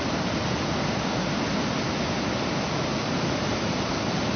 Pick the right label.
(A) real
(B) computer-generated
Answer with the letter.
A